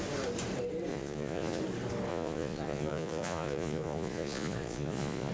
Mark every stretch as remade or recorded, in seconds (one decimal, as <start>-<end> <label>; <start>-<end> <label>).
0.0-0.9 recorded; 0.9-1.6 remade; 1.6-2.1 recorded; 2.1-5.3 remade